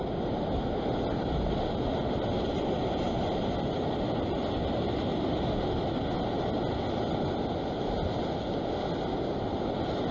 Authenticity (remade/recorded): recorded